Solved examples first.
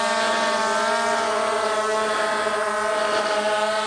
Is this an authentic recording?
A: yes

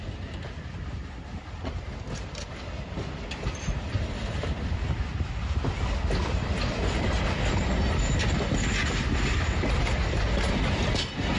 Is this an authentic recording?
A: yes